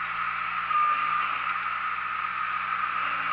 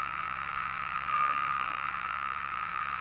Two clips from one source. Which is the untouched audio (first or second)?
first